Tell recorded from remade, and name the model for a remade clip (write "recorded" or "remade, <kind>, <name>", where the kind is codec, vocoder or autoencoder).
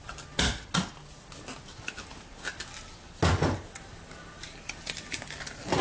recorded